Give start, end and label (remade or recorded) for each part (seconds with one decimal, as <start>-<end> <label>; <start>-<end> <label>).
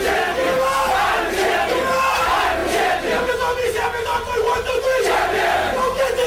0.0-6.3 recorded